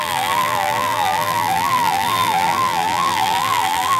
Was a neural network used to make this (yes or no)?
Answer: yes